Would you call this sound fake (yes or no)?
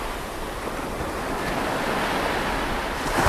yes